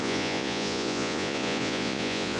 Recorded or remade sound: remade